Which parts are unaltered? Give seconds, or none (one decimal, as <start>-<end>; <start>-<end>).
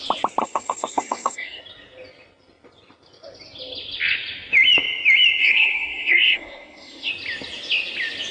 0.0-0.4; 1.6-5.4; 7.1-8.3